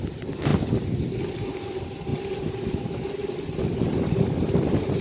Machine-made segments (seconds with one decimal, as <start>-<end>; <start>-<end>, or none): 0.0-0.5; 1.2-5.0